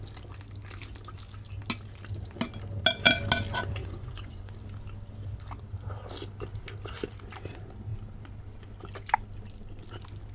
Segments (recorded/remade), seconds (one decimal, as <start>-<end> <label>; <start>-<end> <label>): 0.0-3.8 recorded; 3.8-4.5 remade; 4.5-10.3 recorded